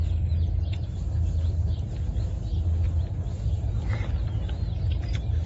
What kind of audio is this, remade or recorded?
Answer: recorded